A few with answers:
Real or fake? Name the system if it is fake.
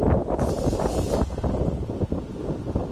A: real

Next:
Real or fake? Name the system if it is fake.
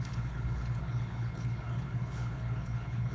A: fake, codec, HILCodec